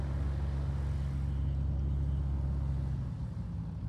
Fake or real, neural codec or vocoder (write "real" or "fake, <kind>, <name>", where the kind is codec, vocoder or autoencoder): real